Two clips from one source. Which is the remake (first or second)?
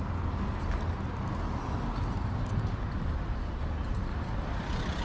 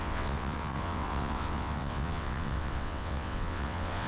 second